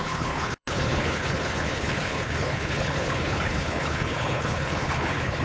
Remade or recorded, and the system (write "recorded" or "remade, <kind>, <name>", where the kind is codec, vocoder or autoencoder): remade, codec, HILCodec